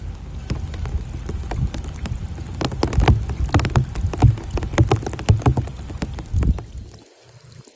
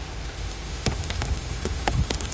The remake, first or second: second